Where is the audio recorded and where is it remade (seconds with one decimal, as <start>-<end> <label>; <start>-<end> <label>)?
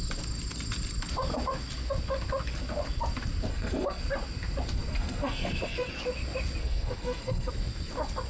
0.0-3.5 recorded; 3.5-4.0 remade; 4.0-4.9 recorded; 4.9-5.9 remade; 5.9-6.6 recorded; 6.6-7.5 remade; 7.5-8.3 recorded